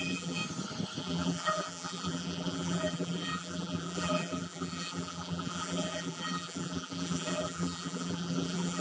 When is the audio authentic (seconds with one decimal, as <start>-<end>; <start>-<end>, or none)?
0.4-1.0